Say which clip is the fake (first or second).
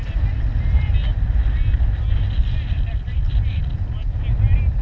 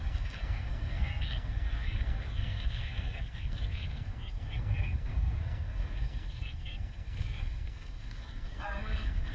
second